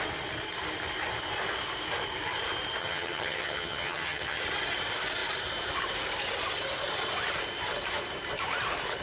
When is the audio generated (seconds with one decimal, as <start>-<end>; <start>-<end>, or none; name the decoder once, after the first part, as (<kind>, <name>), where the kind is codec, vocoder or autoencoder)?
2.8-4.4 (vocoder, HiFi-GAN)